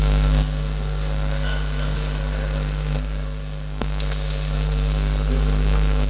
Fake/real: fake